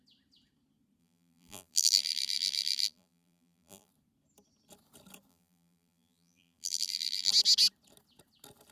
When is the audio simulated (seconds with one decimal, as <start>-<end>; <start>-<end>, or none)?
1.0-3.9; 5.3-7.3